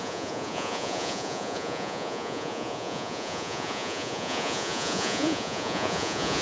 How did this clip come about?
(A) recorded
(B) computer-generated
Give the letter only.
B